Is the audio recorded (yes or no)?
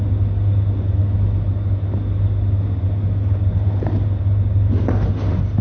yes